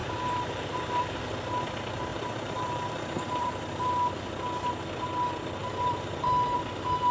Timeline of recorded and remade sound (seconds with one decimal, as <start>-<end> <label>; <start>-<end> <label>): 0.0-1.2 remade; 1.2-2.1 recorded; 2.1-3.9 remade; 3.9-5.6 recorded; 5.6-6.3 remade; 6.3-7.1 recorded